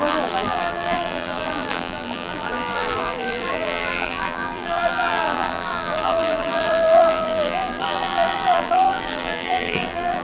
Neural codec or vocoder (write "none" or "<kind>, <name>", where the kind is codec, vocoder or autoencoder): vocoder, BigVGAN v2